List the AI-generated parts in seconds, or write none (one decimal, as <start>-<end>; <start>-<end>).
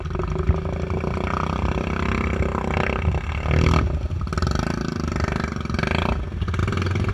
none